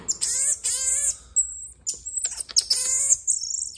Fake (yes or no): no